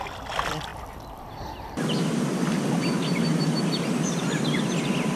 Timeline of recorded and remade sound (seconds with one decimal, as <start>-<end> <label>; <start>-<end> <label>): 0.0-5.2 recorded